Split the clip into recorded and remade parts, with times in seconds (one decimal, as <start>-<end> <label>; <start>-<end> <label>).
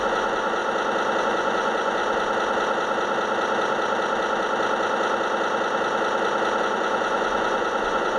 0.0-0.6 remade; 0.6-1.2 recorded; 1.2-2.0 remade; 2.0-6.6 recorded; 6.6-8.2 remade